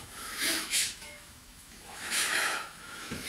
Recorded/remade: remade